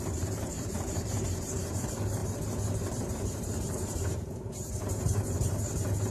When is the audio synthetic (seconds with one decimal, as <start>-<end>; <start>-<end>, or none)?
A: 0.6-1.8; 2.2-6.1